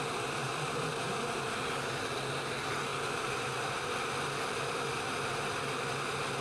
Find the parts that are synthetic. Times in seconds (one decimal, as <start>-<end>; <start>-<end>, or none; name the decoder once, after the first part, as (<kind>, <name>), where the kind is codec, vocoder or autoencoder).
none